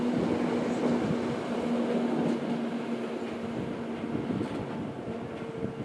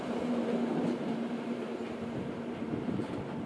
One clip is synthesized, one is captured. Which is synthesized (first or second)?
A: second